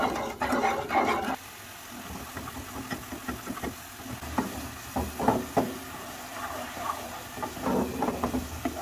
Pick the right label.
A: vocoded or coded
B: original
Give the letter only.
B